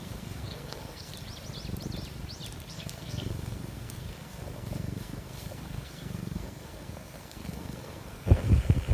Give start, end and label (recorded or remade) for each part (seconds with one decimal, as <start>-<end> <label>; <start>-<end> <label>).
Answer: 0.0-1.1 remade; 1.1-2.7 recorded; 2.7-8.9 remade